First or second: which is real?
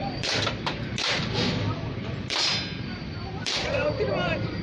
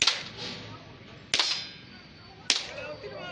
second